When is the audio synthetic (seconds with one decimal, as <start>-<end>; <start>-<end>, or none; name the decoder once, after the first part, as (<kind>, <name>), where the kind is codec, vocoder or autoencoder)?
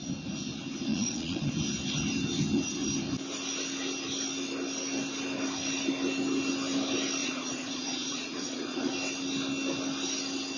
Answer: 0.9-1.5 (vocoder, Vocos); 7.2-8.9